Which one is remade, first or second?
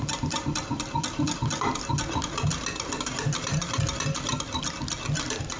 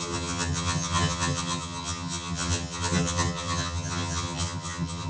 second